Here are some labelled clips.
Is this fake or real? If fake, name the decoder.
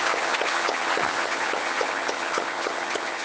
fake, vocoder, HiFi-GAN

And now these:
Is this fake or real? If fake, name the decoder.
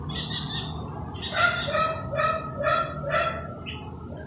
real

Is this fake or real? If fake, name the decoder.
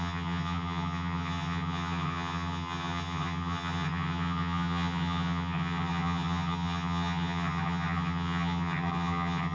fake, vocoder, HiFi-GAN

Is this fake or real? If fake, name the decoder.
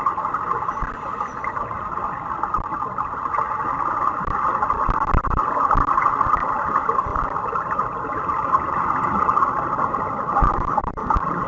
real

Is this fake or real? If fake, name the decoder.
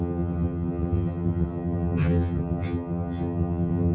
fake, vocoder, HiFi-GAN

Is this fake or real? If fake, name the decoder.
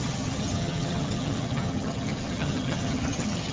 fake, vocoder, HiFi-GAN